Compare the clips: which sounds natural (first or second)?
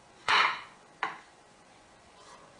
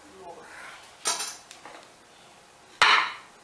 second